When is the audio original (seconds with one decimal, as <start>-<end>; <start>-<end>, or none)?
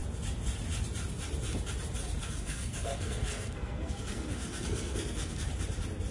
0.0-2.2; 5.5-6.1